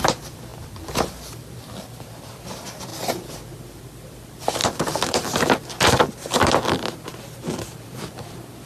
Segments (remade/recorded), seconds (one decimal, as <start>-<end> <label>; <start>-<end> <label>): 0.0-2.9 remade; 2.9-3.5 recorded; 3.5-7.1 remade; 7.1-7.7 recorded; 7.7-8.7 remade